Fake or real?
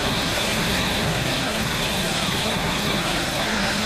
fake